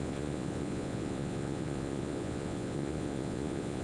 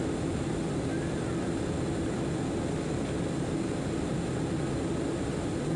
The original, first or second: second